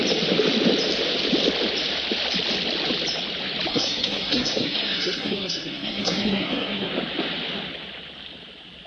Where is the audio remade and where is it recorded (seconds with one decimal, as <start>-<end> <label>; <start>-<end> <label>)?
0.0-3.7 recorded; 3.7-6.9 remade; 6.9-8.9 recorded